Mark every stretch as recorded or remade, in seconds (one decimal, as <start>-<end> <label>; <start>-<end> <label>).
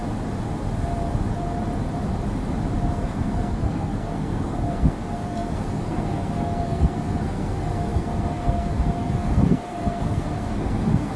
0.0-2.9 recorded; 2.9-11.2 remade